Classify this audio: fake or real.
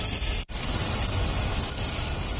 real